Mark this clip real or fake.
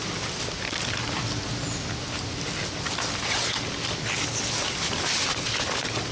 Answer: real